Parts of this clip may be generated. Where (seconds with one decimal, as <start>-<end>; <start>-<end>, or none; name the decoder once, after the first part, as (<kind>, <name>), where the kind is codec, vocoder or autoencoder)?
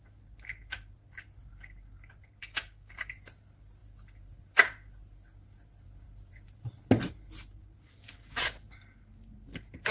2.4-3.1 (codec, DAC)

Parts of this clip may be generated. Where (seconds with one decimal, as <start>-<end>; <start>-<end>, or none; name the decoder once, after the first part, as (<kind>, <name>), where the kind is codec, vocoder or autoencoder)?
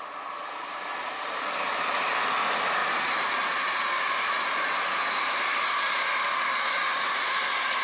none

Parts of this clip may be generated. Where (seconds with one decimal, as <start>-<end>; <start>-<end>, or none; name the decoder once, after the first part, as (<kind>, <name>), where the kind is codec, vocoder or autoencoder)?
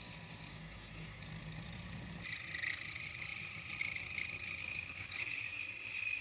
0.5-1.2 (codec, DAC); 4.6-5.6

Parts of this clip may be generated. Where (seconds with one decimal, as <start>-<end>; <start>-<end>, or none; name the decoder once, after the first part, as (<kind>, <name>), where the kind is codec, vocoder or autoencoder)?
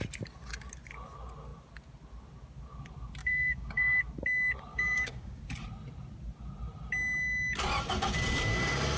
3.2-4.0 (codec, DAC); 4.7-5.4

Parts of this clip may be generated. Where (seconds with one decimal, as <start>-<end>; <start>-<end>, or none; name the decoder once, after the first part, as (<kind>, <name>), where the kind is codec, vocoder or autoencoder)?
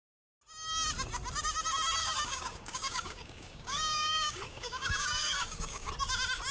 2.0-5.9 (codec, DAC)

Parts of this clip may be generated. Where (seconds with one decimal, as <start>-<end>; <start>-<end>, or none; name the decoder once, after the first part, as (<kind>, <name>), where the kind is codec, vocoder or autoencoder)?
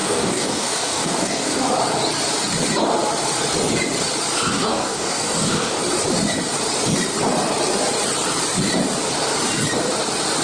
0.0-1.6 (codec, DAC); 4.5-5.8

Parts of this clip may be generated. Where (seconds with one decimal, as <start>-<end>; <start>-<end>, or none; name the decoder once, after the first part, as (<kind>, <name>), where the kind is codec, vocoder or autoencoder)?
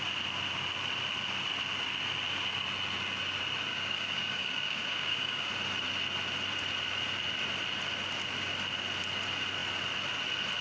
3.7-5.5 (codec, DAC)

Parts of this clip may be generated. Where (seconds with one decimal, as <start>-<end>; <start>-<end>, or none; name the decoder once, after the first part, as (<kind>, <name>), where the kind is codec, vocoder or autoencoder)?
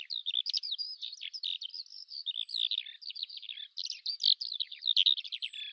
none